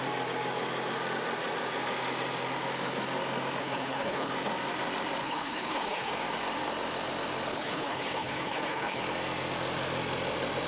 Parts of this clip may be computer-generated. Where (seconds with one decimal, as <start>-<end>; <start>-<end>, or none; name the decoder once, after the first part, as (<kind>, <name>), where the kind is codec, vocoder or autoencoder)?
3.6-4.3 (codec, HILCodec); 5.2-6.1; 7.5-9.0